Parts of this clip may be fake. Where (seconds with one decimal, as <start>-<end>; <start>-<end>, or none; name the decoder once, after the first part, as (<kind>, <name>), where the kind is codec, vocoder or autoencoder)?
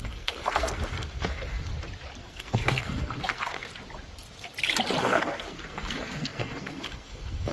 0.0-1.7 (codec, SNAC); 2.2-3.7; 5.0-7.5